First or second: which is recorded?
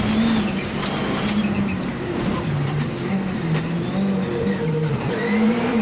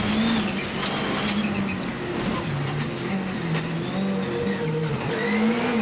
second